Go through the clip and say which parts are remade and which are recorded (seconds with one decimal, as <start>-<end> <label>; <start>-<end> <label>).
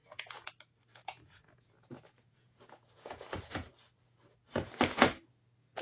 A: 0.0-0.5 remade; 0.5-0.9 recorded; 0.9-3.7 remade; 3.7-5.8 recorded